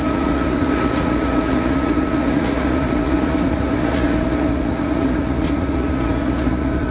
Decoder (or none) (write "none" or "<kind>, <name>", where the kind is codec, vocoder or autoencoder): vocoder, Vocos